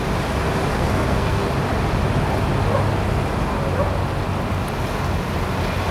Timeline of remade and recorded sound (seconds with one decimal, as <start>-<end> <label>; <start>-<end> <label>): 0.0-0.7 recorded; 0.7-1.5 remade; 1.5-5.9 recorded